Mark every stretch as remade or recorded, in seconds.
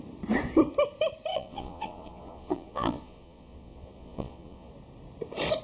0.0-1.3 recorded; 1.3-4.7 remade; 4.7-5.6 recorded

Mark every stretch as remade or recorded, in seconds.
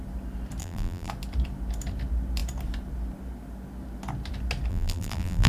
0.0-0.6 recorded; 0.6-1.1 remade; 1.1-4.7 recorded; 4.7-5.5 remade